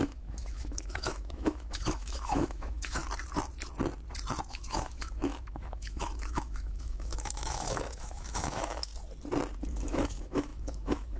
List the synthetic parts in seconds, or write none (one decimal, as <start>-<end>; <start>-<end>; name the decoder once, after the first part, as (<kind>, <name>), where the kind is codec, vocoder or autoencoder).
0.0-3.0 (autoencoder, DAC-VAE); 4.5-8.9; 9.7-11.2

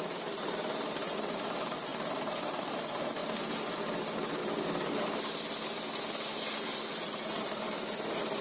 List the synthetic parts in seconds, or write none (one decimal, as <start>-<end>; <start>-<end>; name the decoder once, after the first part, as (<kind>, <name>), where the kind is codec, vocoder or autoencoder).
0.0-3.2 (vocoder, BigVGAN v2); 4.0-4.4; 6.9-8.4

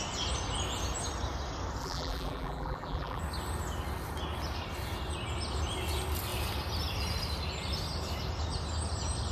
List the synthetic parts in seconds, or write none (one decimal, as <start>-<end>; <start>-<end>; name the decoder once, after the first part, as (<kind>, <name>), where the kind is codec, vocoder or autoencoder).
1.8-3.2 (vocoder, BigVGAN v2)

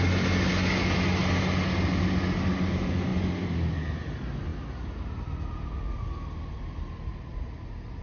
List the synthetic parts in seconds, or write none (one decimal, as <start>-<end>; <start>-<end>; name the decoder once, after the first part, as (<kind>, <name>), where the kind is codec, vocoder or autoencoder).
none

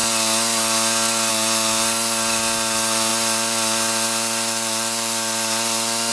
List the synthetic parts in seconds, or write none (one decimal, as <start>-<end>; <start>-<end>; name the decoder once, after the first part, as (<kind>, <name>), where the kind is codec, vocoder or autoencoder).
3.1-6.1 (vocoder, BigVGAN v2)

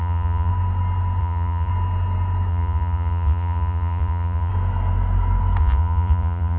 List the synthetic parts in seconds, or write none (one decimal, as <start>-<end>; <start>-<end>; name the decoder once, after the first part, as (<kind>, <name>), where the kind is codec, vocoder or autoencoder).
0.0-0.5 (vocoder, Vocos); 1.2-1.7; 2.5-4.5; 5.6-6.6

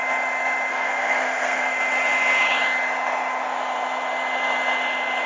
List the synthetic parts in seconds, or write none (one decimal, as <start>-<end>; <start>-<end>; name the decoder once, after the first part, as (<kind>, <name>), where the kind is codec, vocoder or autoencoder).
0.7-1.7 (codec, SNAC)

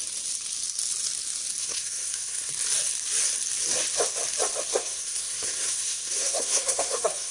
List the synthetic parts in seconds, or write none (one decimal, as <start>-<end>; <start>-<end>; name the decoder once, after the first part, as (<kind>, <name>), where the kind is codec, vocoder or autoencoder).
1.6-2.5 (codec, SNAC); 4.7-7.3